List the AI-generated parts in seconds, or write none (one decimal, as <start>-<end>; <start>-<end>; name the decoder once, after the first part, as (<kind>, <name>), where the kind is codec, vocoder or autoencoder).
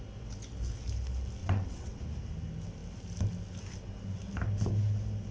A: 1.4-2.0 (vocoder, WaveNeXt)